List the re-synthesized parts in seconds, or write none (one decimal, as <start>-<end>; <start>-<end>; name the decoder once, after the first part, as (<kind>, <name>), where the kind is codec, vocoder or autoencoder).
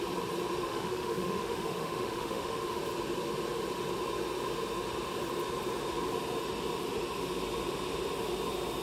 0.6-2.8 (autoencoder, DAC-VAE)